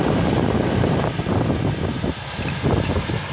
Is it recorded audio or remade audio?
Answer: remade